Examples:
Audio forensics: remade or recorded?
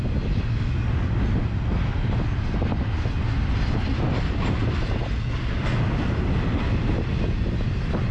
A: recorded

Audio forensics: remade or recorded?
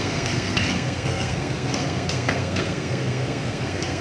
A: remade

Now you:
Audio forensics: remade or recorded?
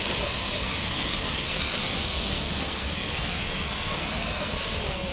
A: remade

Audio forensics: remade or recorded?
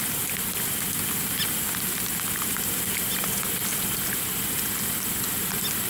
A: recorded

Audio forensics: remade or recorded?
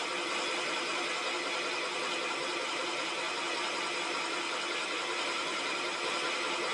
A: recorded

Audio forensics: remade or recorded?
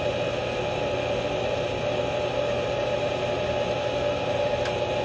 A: recorded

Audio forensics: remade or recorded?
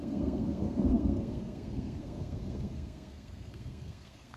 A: remade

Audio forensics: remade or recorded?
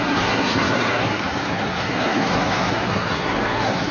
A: remade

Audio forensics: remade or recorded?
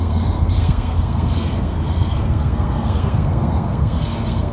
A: remade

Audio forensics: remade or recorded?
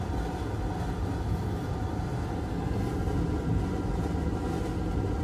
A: recorded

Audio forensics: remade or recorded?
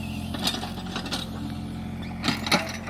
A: recorded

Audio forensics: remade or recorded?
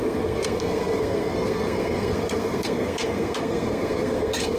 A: remade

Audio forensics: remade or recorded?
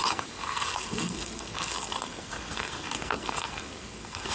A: remade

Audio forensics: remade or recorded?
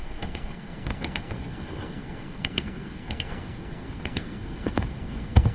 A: remade